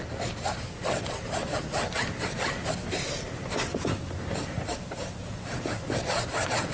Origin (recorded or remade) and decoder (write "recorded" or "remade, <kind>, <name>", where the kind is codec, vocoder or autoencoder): recorded